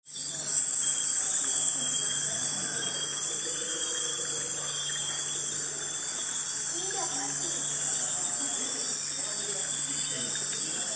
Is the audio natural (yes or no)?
yes